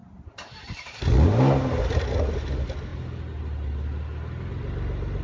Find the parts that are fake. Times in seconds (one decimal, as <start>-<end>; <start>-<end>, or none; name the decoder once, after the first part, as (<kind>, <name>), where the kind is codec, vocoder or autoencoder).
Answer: none

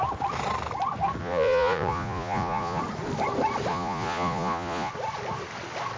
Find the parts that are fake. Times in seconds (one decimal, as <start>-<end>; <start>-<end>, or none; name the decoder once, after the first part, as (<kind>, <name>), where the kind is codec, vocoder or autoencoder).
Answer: 1.2-2.8 (vocoder, Vocos); 3.7-4.9

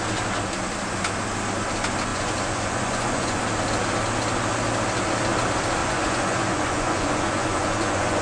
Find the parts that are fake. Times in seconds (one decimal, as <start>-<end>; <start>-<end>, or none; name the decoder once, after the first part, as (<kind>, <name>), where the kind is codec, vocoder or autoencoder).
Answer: 2.1-3.4 (vocoder, Vocos); 5.8-8.2